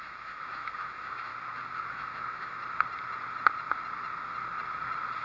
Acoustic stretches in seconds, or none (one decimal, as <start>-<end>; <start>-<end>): 1.3-1.8; 2.6-5.2